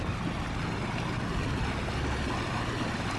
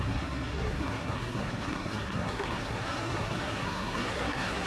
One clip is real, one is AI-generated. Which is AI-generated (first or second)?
second